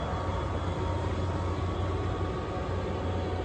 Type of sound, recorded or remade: recorded